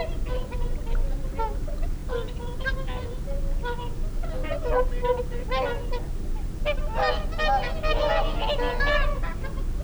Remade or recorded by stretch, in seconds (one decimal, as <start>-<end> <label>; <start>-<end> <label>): 0.0-9.8 recorded